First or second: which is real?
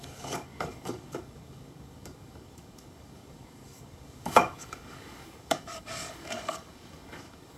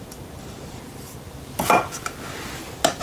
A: second